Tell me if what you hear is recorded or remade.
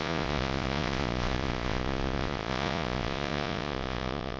remade